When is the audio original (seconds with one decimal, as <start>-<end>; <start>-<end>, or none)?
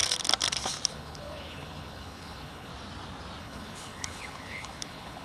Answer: 0.0-0.9; 2.7-3.4